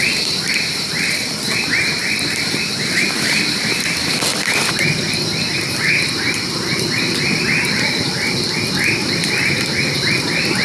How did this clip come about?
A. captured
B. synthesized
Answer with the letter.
A